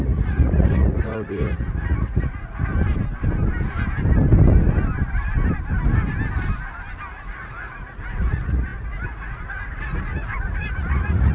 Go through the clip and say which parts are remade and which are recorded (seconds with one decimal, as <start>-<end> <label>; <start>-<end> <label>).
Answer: 0.0-2.7 remade; 2.7-7.1 recorded; 7.1-11.3 remade